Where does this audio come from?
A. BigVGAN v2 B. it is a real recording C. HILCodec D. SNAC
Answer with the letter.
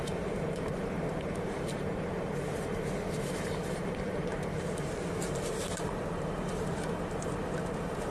A